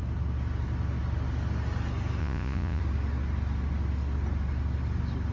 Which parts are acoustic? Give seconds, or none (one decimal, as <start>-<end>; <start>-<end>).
0.0-2.2; 2.8-5.3